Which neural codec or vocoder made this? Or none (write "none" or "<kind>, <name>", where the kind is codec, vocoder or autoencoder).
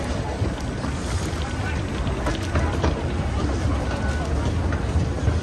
none